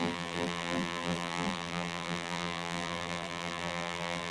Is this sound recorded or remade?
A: remade